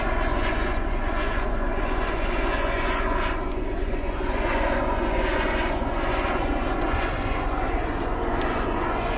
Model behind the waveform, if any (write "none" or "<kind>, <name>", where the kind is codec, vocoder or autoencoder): vocoder, Vocos